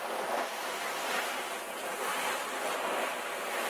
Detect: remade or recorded remade